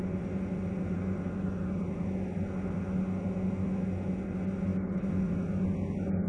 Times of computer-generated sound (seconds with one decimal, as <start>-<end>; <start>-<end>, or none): none